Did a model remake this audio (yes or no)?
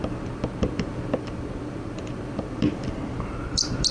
yes